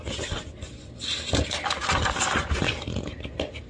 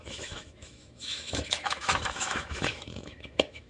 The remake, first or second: second